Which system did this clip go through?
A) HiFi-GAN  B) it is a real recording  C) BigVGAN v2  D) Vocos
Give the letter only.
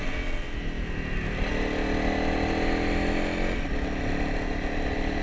B